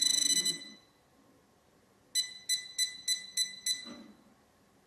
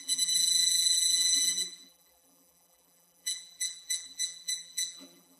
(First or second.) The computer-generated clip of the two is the second